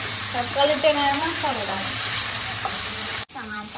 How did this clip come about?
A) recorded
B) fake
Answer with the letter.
B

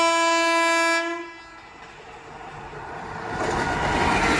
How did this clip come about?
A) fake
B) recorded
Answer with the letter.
B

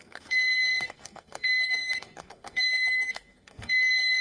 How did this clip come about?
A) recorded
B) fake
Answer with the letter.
B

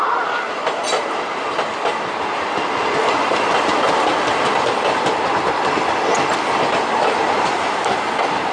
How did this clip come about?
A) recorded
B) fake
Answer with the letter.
A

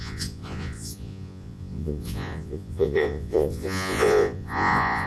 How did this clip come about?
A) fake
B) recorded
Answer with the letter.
A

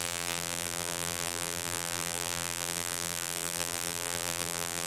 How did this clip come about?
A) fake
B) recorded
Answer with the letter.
A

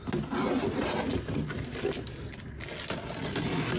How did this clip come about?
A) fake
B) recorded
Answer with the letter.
B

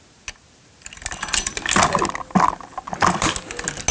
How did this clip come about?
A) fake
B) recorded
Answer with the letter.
B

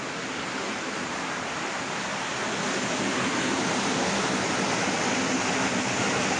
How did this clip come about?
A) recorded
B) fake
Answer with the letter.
A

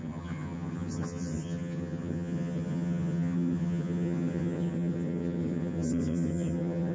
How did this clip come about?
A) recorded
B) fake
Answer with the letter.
B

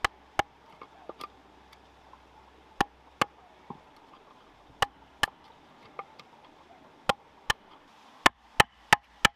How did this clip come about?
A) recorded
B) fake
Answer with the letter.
A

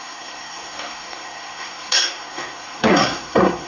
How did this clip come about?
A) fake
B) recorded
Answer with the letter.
A